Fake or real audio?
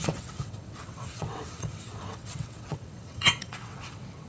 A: fake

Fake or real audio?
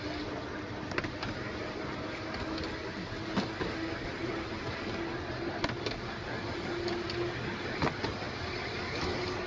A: real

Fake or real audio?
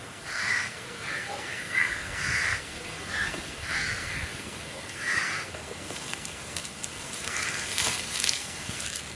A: fake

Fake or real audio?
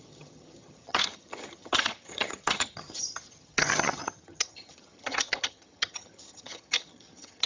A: fake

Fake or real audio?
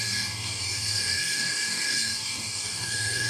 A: fake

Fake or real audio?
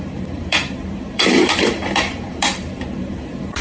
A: fake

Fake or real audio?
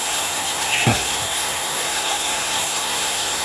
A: fake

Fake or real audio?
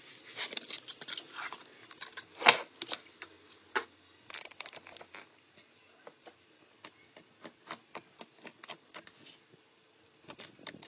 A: real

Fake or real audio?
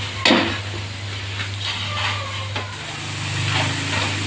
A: real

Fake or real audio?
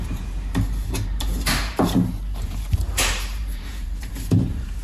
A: fake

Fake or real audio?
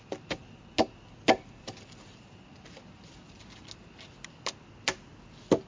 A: real